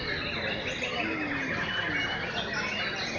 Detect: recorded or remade recorded